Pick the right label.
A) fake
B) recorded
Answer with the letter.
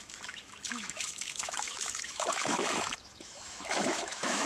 A